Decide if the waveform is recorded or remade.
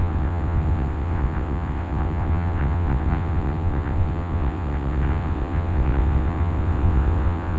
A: remade